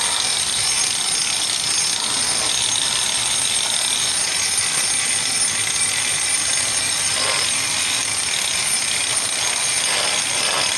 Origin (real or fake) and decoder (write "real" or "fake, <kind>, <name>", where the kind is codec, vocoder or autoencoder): real